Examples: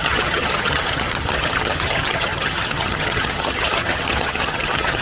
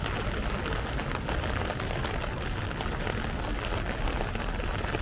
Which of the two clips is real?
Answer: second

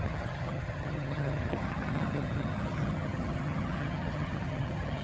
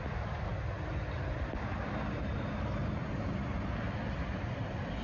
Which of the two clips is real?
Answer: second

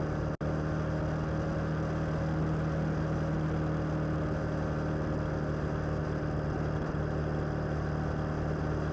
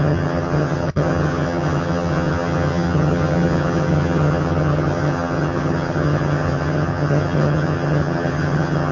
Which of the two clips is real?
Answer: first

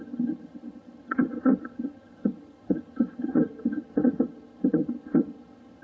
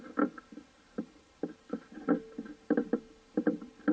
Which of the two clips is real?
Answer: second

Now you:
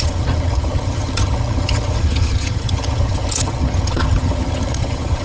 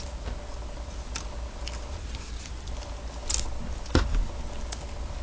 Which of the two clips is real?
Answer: second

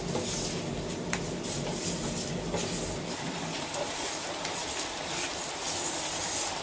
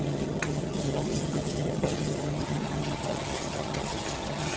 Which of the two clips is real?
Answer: first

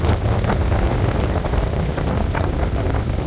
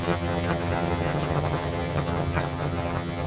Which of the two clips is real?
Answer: first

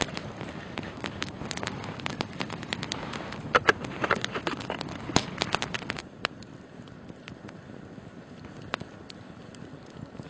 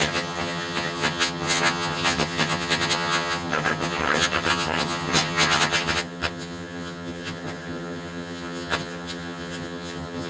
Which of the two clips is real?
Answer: first